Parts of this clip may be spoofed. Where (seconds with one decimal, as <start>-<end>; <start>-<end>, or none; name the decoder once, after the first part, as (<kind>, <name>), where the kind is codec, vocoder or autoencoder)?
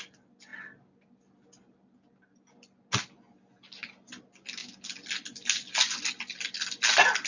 none